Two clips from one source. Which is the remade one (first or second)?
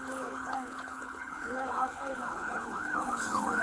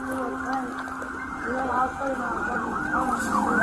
first